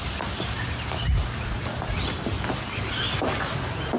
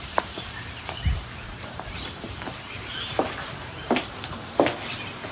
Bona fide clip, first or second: first